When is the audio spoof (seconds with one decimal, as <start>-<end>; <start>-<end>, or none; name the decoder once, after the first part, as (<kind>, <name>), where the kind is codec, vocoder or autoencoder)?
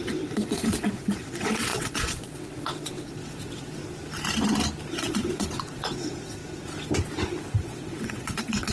0.0-3.8 (vocoder, WaveNeXt); 4.9-6.4; 7.6-8.7